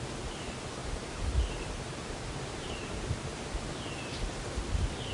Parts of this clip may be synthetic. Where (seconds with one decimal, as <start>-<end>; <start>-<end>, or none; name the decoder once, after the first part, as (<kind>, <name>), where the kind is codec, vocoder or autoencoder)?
0.8-3.3 (vocoder, BigVGAN v2)